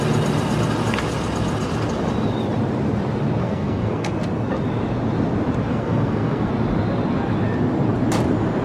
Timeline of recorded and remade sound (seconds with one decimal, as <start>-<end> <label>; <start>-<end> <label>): 0.0-3.4 recorded; 3.4-4.1 remade; 4.1-5.7 recorded; 5.7-6.5 remade; 6.5-8.6 recorded